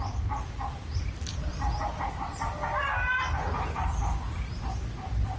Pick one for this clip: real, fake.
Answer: real